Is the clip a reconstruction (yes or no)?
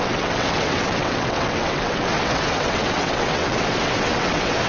yes